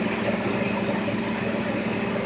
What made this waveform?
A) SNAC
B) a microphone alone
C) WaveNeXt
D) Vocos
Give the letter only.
B